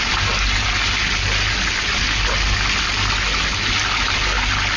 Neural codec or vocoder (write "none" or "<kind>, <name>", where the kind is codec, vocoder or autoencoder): none